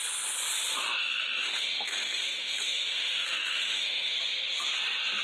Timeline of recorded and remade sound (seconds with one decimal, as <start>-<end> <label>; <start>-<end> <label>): 0.0-1.0 recorded; 1.0-4.1 remade; 4.1-5.2 recorded